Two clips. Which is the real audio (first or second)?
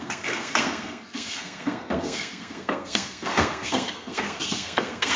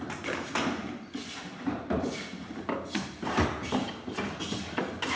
second